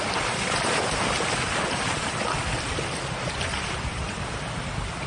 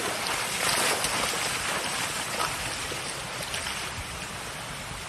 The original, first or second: second